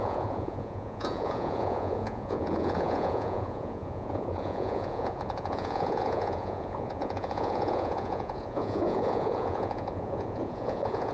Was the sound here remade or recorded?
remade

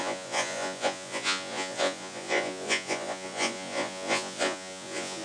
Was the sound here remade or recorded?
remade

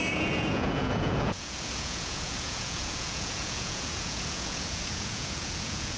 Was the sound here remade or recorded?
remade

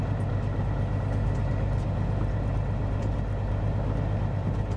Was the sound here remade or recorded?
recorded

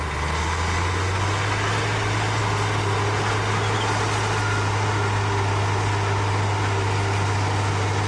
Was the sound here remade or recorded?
recorded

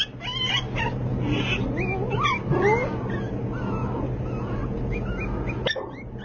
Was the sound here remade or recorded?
recorded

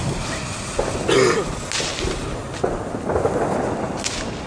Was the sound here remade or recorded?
recorded